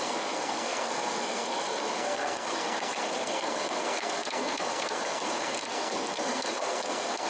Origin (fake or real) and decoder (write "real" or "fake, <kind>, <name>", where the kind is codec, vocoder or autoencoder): fake, codec, SNAC